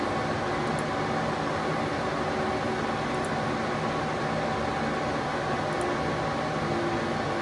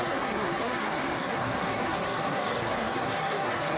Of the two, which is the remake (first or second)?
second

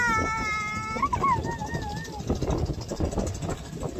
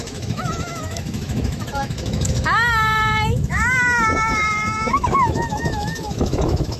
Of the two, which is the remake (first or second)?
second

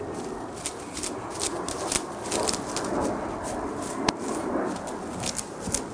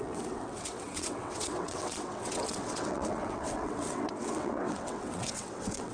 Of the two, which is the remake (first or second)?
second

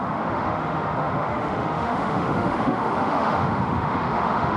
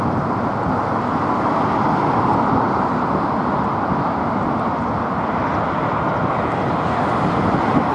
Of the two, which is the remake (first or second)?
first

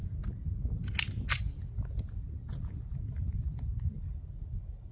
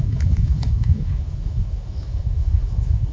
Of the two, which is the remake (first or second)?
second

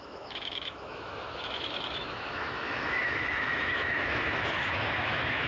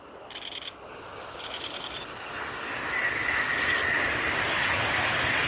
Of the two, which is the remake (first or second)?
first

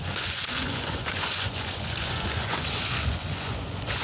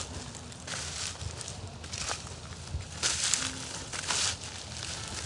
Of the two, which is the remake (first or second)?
first